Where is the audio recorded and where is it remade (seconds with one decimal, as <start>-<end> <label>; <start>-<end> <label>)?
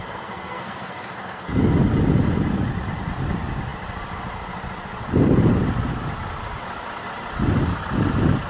0.0-1.6 remade; 1.6-8.5 recorded